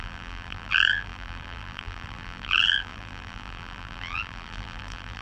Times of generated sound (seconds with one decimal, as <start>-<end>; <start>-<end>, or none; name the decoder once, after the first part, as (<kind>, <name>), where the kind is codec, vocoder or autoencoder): 0.0-5.2 (vocoder, BigVGAN v2)